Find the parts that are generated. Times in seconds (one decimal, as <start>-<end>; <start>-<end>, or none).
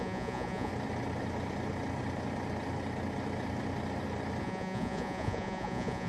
0.0-0.7; 4.4-6.1